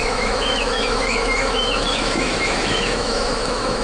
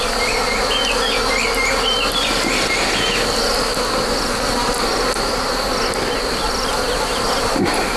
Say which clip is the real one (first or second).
second